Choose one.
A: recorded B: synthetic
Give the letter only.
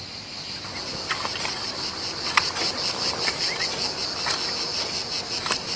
A